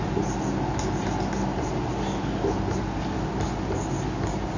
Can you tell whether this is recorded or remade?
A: recorded